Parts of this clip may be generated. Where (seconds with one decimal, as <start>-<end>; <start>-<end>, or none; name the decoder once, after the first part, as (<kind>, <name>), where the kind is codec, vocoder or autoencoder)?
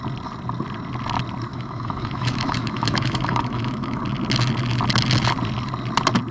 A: 1.5-4.0 (autoencoder, DAC-VAE)